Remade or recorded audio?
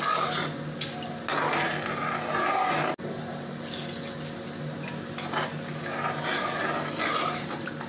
recorded